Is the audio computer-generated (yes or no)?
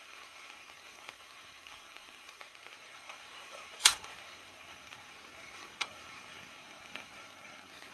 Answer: yes